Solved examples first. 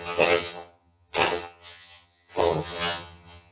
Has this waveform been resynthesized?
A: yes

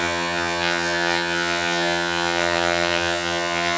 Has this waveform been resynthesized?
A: yes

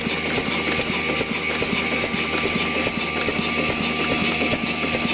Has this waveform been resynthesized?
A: no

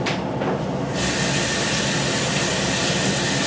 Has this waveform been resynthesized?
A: no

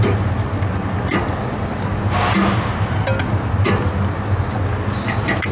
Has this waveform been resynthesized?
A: no